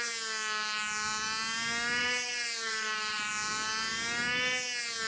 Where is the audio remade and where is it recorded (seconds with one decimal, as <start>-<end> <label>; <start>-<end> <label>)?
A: 0.0-2.0 recorded; 2.0-3.3 remade; 3.3-5.1 recorded